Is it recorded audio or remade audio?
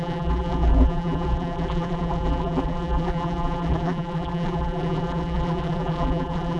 remade